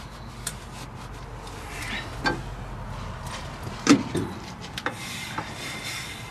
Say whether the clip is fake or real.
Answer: real